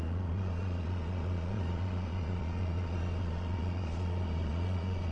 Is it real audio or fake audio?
fake